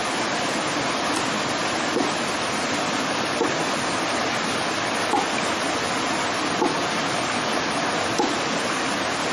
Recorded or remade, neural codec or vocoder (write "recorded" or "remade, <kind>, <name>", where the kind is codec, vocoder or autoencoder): recorded